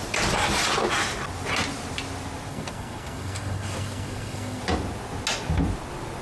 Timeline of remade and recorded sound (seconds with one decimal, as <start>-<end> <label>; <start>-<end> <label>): 0.0-2.5 recorded; 2.5-4.6 remade; 4.6-6.2 recorded